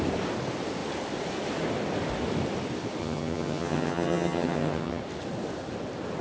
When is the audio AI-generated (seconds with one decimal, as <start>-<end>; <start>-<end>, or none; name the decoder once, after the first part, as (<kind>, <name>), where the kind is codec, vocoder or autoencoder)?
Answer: 3.0-5.0 (vocoder, HiFi-GAN)

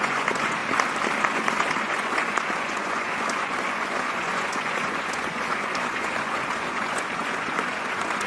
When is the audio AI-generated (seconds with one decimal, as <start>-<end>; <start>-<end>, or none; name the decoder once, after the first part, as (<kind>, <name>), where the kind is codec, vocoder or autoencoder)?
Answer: 0.0-0.6 (vocoder, Vocos); 1.2-8.3

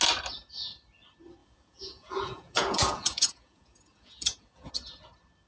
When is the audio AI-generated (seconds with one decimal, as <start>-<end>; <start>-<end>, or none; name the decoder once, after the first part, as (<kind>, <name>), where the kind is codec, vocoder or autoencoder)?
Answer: 1.4-4.7 (vocoder, Vocos)

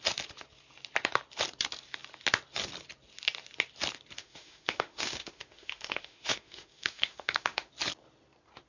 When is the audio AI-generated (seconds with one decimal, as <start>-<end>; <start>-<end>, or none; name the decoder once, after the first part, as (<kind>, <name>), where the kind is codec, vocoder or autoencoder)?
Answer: 4.2-7.7 (autoencoder, DAC-VAE)

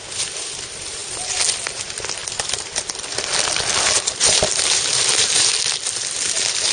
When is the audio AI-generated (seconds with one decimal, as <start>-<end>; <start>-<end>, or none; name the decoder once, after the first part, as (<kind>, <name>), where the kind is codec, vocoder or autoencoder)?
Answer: none

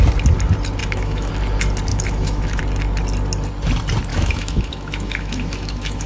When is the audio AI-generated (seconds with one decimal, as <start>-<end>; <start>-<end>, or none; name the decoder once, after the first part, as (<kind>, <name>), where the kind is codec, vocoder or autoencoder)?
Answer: 0.8-1.3 (autoencoder, DAC-VAE); 1.9-2.6; 4.1-6.1

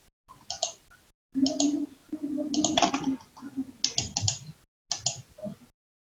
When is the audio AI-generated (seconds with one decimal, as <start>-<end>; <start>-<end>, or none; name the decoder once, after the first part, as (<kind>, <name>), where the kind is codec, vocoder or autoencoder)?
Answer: none

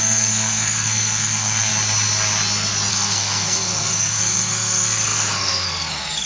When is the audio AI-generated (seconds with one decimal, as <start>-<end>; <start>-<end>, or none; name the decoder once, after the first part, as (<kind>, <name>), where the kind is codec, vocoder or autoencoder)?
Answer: 0.0-1.7 (codec, SNAC); 2.9-6.3